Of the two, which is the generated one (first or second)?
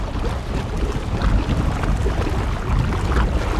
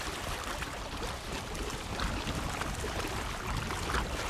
second